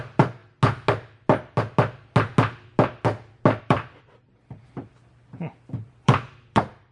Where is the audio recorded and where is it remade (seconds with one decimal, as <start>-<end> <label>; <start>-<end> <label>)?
0.0-0.4 remade; 0.4-3.6 recorded; 3.6-6.9 remade